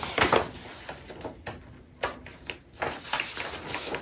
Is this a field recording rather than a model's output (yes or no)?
yes